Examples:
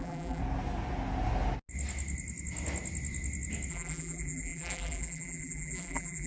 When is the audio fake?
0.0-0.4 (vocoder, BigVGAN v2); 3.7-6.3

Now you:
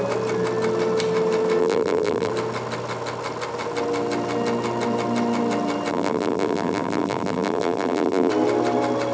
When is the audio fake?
1.6-2.3 (vocoder, BigVGAN v2); 5.9-8.3

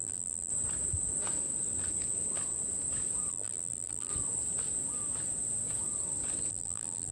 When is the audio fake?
0.0-0.5 (vocoder, BigVGAN v2); 3.3-4.1; 6.5-7.1

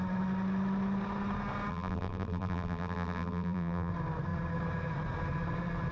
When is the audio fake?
1.7-3.9 (vocoder, BigVGAN v2)

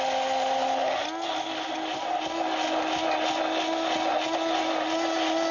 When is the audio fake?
none

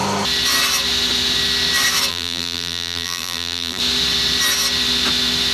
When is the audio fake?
2.1-3.8 (vocoder, BigVGAN v2)

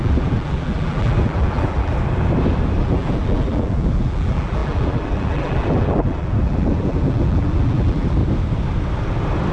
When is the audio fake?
0.0-1.9 (vocoder, BigVGAN v2); 2.8-8.2

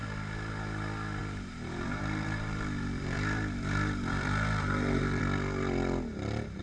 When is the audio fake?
1.2-5.2 (vocoder, BigVGAN v2)